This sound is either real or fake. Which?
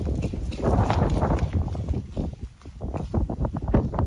fake